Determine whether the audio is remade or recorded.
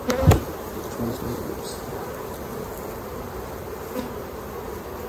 recorded